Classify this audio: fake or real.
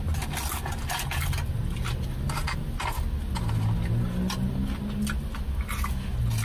real